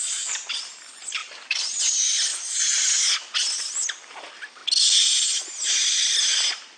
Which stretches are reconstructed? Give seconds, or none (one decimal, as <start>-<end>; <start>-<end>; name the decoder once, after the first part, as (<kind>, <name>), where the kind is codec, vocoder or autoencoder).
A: 1.2-1.8 (vocoder, BigVGAN v2); 2.3-2.9